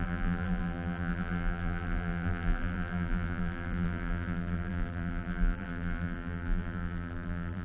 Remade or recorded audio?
remade